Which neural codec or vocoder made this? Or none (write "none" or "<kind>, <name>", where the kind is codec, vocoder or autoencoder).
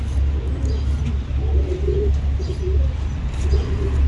none